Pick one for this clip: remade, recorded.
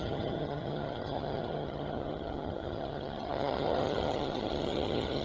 remade